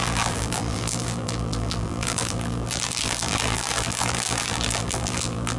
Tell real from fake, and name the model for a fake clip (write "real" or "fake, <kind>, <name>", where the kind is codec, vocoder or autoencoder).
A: fake, vocoder, BigVGAN v2